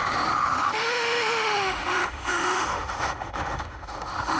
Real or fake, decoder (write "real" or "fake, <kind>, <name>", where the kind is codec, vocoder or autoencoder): fake, autoencoder, DAC-VAE